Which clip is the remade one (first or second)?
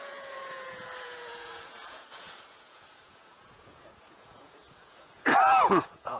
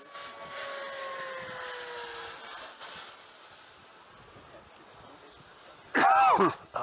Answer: first